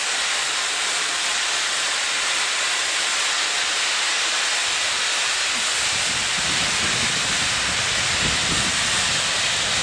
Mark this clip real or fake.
real